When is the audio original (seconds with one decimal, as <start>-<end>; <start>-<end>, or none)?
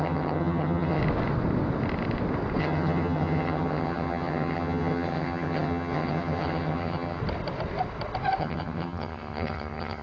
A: 1.0-2.6; 7.2-8.4